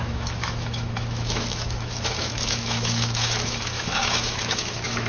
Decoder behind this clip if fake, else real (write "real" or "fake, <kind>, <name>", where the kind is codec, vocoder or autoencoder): fake, autoencoder, DAC-VAE